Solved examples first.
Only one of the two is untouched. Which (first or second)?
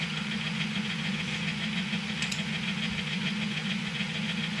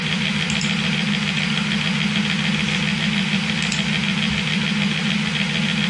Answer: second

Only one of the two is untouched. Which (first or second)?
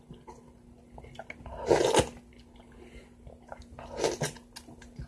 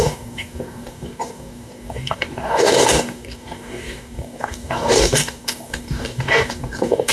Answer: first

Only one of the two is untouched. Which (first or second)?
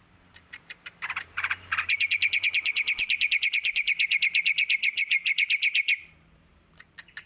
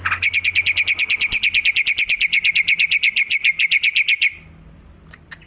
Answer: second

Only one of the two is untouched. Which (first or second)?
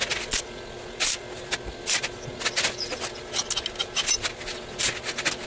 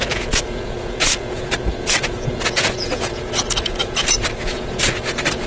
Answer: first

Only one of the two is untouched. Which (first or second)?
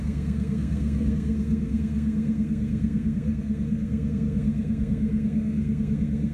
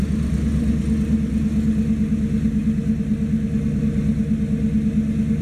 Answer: second